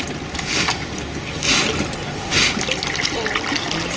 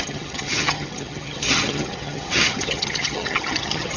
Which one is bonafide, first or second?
first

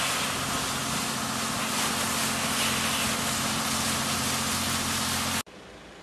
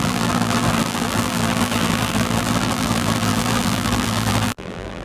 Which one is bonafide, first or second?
first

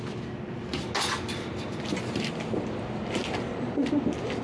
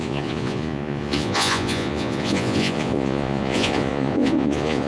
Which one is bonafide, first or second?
first